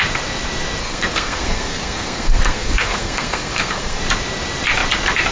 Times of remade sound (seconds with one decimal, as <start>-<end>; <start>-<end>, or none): 0.8-4.0